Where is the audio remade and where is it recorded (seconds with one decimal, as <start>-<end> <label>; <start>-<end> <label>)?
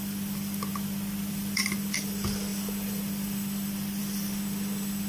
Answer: 0.0-0.7 remade; 0.7-1.3 recorded; 1.3-5.1 remade